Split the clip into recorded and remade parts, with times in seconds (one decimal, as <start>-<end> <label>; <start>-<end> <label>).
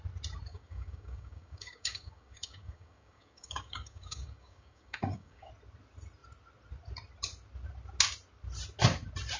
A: 0.0-0.5 recorded; 0.5-5.5 remade; 5.5-9.4 recorded